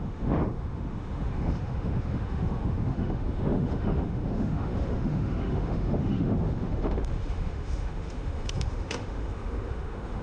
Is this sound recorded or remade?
remade